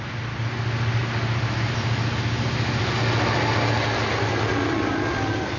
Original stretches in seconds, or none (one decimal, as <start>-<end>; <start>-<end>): 0.0-5.6